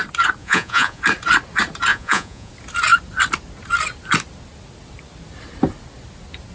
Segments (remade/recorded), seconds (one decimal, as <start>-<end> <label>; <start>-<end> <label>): 0.0-0.4 recorded; 0.4-1.0 remade; 1.0-1.9 recorded; 1.9-2.5 remade; 2.5-6.5 recorded